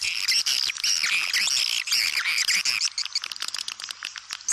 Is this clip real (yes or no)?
yes